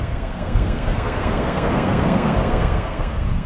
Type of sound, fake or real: fake